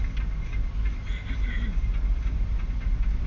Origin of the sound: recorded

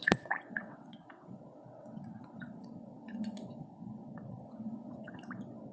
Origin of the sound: remade